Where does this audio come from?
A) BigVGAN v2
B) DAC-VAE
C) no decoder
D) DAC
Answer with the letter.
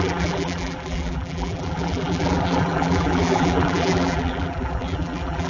A